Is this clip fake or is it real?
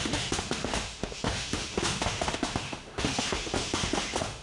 fake